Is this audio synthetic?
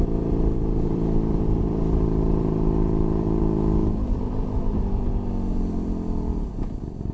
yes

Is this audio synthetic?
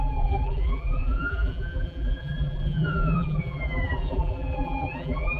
yes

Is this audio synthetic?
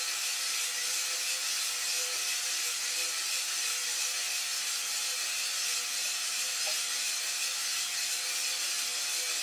no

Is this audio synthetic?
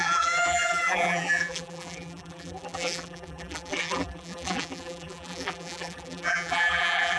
yes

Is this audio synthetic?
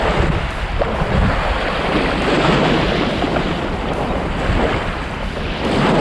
no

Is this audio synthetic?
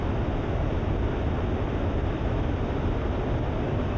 no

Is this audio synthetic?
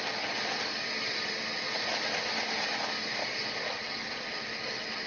no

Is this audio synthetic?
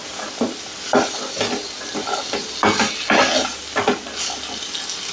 no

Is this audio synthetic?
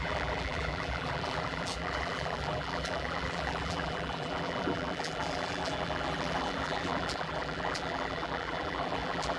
yes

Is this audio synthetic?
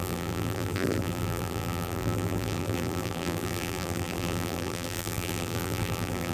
yes